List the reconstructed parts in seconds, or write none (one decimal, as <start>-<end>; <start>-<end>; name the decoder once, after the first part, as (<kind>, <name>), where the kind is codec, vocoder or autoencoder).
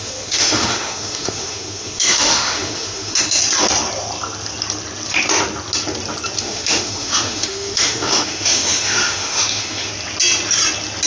0.0-3.4 (autoencoder, DAC-VAE); 6.4-9.9